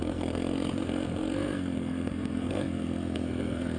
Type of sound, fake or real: fake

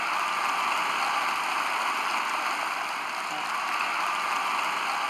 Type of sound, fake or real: real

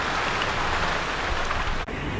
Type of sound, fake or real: real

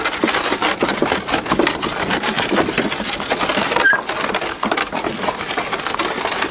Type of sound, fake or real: real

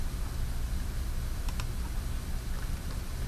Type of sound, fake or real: real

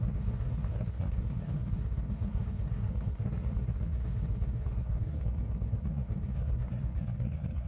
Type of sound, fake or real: fake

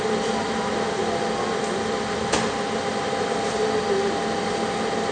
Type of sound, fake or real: real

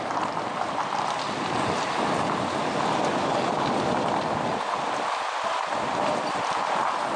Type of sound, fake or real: real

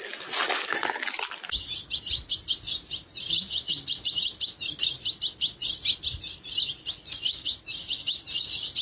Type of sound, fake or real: real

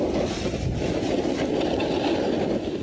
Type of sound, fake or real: real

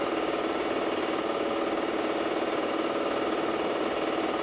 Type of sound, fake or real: real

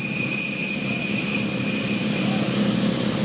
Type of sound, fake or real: real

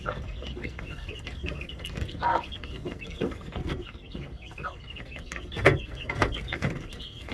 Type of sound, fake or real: fake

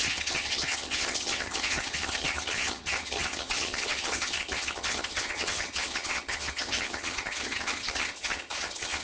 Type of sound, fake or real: fake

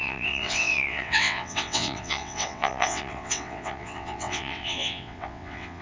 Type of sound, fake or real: fake